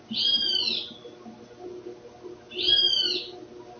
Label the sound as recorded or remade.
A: recorded